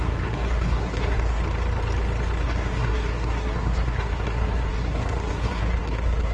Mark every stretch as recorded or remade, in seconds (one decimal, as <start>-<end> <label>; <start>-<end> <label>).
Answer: 0.0-1.4 remade; 1.4-2.4 recorded; 2.4-6.3 remade